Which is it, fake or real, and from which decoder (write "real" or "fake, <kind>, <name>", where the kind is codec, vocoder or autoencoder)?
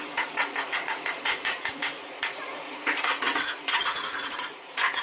fake, vocoder, Vocos